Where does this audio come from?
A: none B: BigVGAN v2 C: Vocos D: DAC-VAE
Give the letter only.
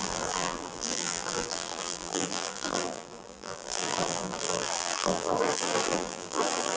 B